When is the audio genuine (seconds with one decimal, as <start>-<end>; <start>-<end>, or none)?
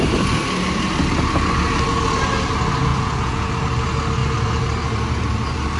0.0-2.9; 3.5-5.8